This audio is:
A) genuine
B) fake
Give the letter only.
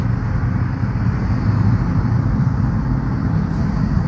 A